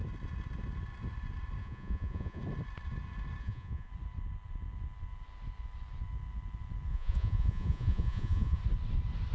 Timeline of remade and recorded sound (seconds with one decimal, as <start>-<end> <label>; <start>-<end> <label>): 0.0-1.6 recorded; 1.6-2.4 remade; 2.4-3.4 recorded; 3.4-3.9 remade; 3.9-6.9 recorded; 6.9-8.6 remade; 8.6-9.3 recorded